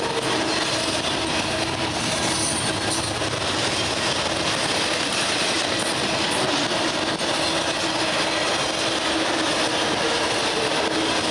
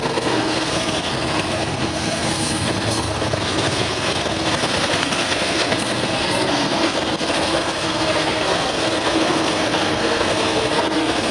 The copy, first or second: second